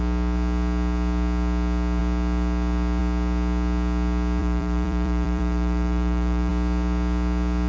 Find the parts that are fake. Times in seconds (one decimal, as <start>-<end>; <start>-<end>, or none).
4.4-6.5